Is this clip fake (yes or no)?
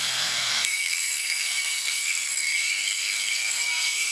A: yes